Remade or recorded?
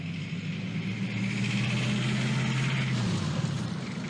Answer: recorded